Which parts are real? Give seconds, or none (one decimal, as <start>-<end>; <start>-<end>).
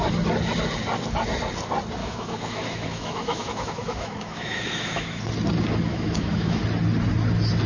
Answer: 0.0-2.0; 5.2-5.9; 6.6-7.7